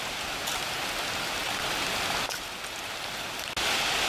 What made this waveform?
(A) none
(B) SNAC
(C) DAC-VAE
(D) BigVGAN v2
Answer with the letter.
A